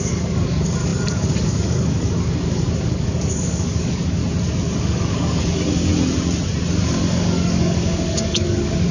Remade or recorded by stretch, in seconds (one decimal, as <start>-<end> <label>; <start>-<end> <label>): 0.0-4.2 remade; 4.2-4.8 recorded; 4.8-5.9 remade; 5.9-6.9 recorded; 6.9-8.9 remade